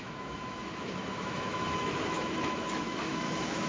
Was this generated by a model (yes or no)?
yes